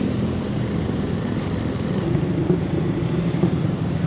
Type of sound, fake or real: fake